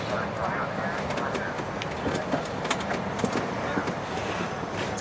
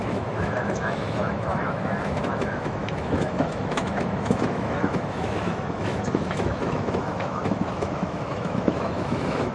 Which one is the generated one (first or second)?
second